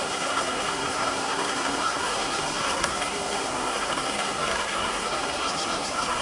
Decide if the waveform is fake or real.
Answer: fake